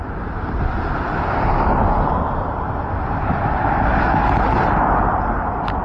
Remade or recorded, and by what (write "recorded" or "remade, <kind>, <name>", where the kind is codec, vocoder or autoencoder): recorded